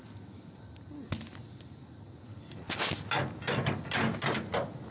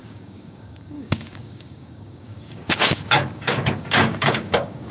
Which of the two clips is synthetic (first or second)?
second